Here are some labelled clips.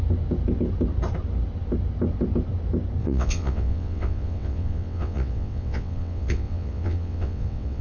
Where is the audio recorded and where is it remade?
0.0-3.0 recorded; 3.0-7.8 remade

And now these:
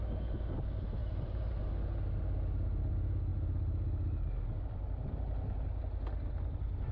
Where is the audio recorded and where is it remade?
0.0-1.0 recorded; 1.0-1.6 remade; 1.6-6.9 recorded

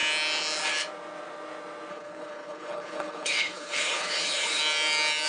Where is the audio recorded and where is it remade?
0.0-1.9 recorded; 1.9-4.6 remade; 4.6-5.3 recorded